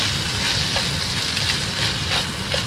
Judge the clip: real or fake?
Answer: real